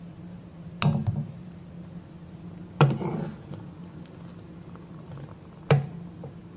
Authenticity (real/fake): real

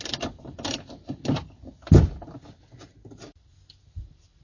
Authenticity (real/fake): real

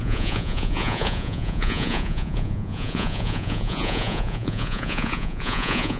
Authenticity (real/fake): fake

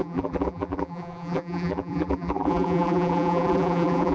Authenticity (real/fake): fake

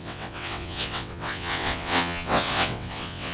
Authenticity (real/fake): fake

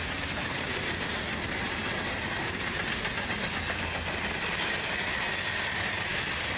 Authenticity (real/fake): real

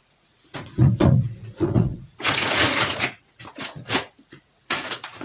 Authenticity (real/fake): fake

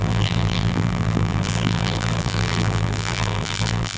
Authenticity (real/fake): fake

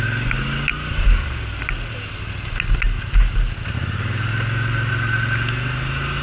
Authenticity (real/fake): real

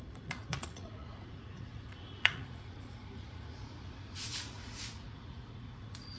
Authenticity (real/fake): fake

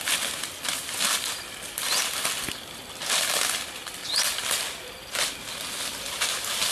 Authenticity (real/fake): real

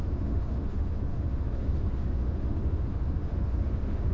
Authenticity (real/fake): fake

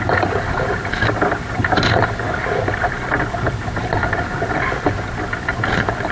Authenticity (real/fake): real